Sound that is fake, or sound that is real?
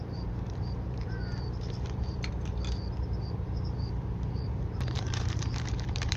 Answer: fake